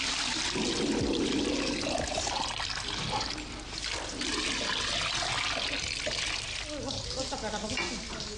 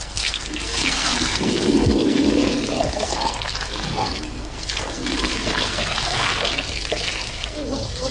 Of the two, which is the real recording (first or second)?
first